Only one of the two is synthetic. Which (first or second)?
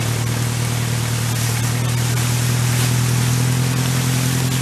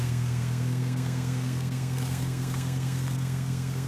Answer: second